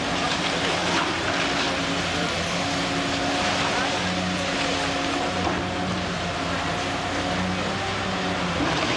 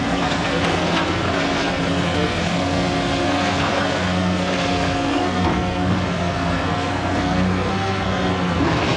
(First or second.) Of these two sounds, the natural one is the first